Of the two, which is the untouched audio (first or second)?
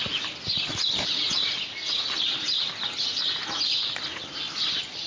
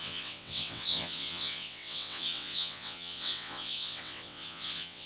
first